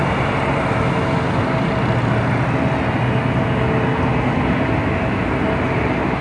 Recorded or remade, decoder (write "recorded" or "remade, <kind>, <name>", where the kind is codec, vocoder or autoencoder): recorded